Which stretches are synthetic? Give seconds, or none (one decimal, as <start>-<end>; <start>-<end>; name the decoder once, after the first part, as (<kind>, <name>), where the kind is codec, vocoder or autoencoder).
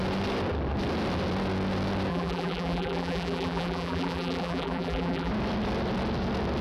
2.1-5.3 (vocoder, BigVGAN v2)